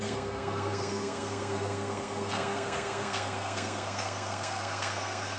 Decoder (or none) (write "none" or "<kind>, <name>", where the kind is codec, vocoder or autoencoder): codec, SNAC